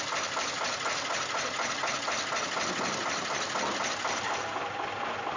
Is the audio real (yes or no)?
yes